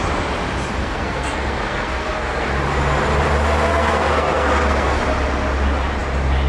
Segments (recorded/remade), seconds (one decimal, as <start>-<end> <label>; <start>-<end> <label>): 0.0-0.8 recorded; 0.8-2.5 remade; 2.5-3.7 recorded; 3.7-5.0 remade; 5.0-6.5 recorded